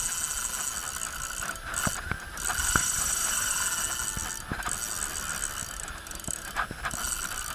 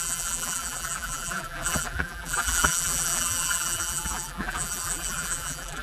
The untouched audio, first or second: first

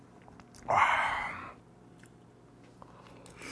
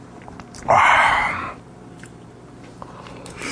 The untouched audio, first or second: first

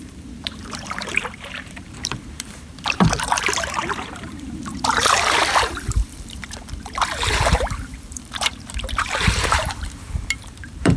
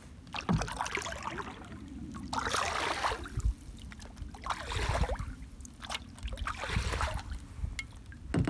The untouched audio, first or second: second